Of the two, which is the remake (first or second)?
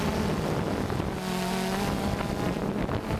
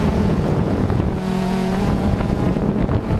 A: second